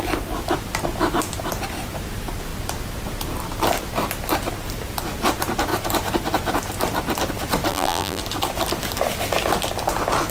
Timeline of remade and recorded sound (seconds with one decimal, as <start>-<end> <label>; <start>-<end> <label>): 0.0-7.7 recorded; 7.7-8.2 remade; 8.2-10.3 recorded